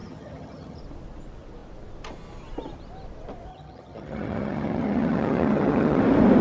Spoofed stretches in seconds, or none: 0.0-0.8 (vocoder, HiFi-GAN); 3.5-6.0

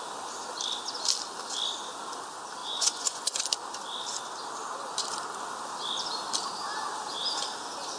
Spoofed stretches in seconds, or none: 2.6-3.4 (vocoder, Vocos)

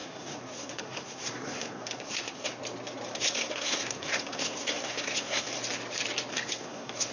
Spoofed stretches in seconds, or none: 0.0-2.6 (codec, SNAC); 3.1-5.6; 6.3-7.1

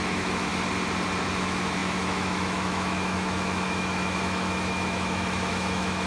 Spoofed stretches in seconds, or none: 0.0-0.5 (autoencoder, DAC-VAE); 1.2-6.1

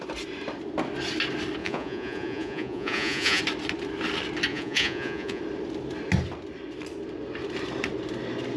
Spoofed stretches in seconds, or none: 1.6-3.4 (vocoder, Vocos); 4.5-5.4

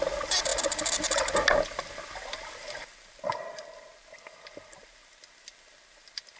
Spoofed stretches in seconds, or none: none

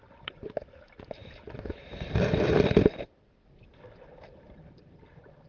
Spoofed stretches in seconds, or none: none